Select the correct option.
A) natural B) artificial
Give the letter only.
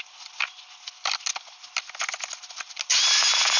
A